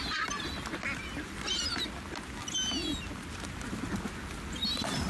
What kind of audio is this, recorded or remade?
recorded